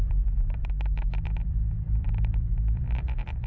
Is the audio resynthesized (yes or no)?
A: yes